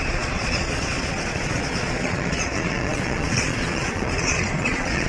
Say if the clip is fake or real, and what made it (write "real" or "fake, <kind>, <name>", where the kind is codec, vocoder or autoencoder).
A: fake, vocoder, Vocos